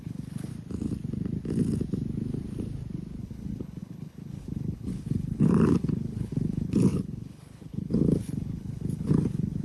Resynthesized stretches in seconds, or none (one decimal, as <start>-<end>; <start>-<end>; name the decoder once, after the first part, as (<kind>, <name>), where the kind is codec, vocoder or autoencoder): 0.0-0.5 (codec, HILCodec); 3.2-9.6